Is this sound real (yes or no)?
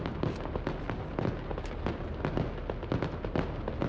yes